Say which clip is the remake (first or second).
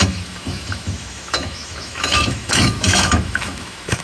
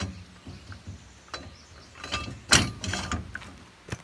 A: first